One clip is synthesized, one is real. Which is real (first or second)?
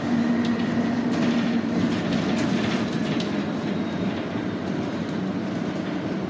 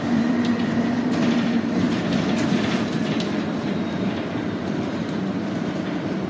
first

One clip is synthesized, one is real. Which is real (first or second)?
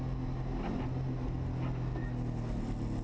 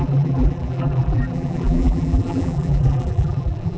first